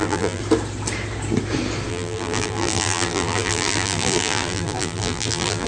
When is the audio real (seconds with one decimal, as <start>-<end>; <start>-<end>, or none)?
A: 0.4-1.9